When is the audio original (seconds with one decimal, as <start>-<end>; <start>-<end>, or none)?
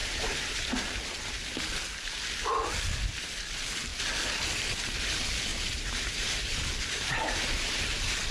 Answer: 0.7-5.5